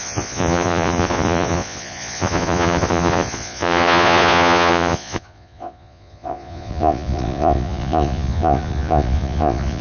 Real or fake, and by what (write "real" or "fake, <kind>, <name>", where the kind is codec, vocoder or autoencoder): fake, vocoder, Vocos